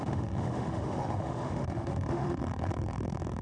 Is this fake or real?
fake